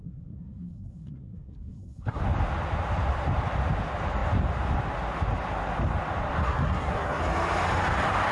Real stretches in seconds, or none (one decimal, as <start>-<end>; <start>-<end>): 2.2-6.4; 7.2-8.3